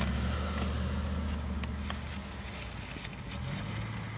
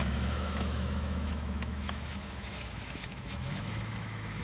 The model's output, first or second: second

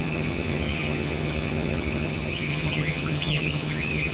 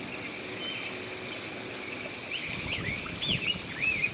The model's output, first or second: first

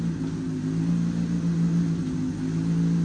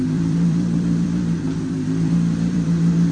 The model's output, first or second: second